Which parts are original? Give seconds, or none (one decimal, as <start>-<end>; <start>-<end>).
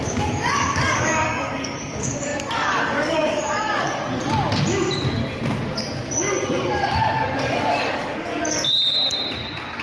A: 4.0-7.7; 8.3-9.8